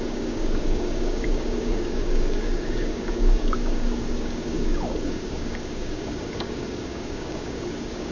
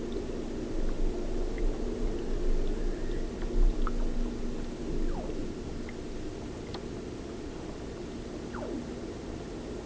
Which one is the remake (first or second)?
first